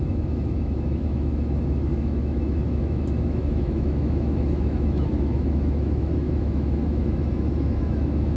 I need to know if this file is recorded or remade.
remade